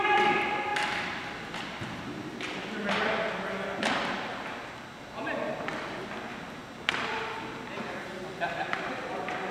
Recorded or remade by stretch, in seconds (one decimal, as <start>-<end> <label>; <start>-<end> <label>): 0.0-6.6 remade; 6.6-7.4 recorded; 7.4-9.5 remade